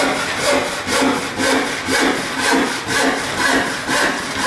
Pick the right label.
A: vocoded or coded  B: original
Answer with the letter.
B